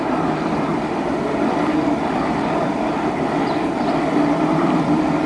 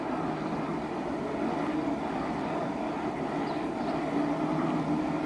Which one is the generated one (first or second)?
first